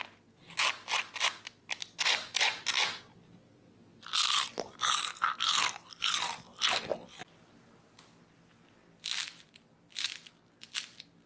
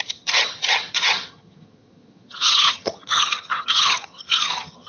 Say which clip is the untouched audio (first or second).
first